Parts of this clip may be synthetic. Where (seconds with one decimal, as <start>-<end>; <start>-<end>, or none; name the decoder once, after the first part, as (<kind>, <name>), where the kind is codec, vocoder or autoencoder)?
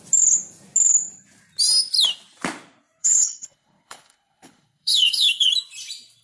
3.0-5.5 (codec, HILCodec)